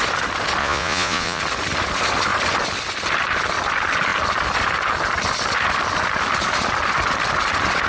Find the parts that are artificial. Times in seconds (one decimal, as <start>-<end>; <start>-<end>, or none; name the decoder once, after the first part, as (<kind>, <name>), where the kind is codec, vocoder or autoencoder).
0.6-1.4 (vocoder, Vocos)